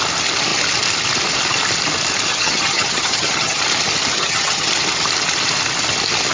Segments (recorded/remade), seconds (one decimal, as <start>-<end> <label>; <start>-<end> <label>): 0.0-2.3 recorded; 2.3-3.6 remade; 3.6-4.1 recorded; 4.1-4.7 remade; 4.7-6.3 recorded